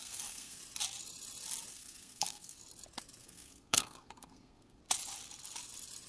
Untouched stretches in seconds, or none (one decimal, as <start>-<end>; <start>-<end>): 0.6-1.7; 2.6-3.2; 4.8-6.1